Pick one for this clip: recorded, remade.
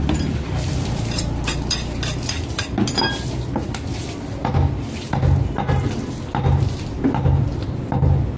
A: recorded